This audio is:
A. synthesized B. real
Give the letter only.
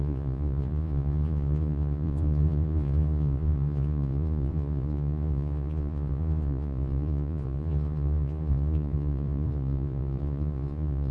A